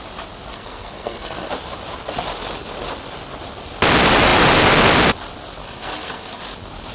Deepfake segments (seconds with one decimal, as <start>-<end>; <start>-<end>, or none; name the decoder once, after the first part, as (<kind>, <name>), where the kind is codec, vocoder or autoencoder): 0.5-1.5 (codec, SNAC); 5.6-6.4